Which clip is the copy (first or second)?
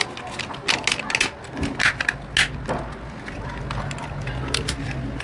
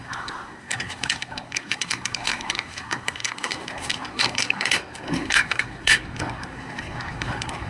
second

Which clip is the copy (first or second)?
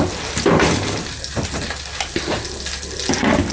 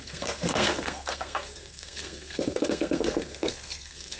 second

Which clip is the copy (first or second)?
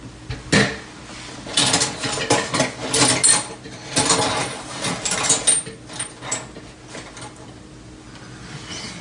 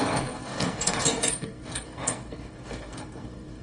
second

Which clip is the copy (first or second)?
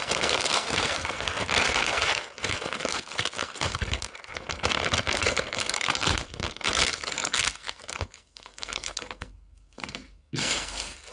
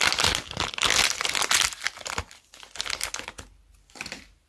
first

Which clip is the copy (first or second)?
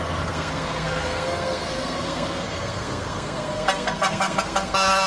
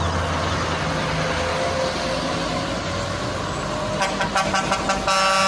first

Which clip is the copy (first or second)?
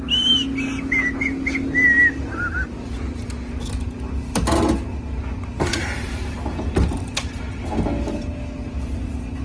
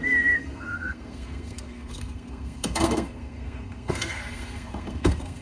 second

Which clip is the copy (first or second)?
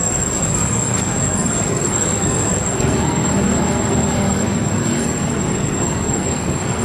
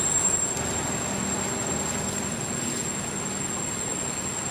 first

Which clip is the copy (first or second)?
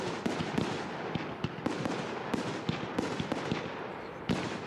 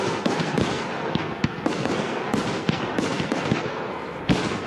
second